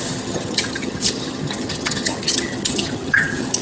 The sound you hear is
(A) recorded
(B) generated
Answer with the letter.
B